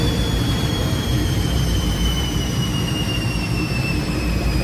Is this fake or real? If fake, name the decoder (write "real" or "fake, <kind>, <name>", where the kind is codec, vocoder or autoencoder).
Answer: fake, vocoder, BigVGAN v2